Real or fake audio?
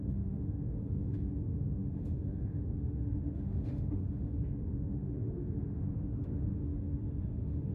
fake